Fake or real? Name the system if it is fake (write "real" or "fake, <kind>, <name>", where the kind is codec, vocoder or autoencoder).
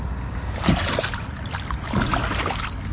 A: real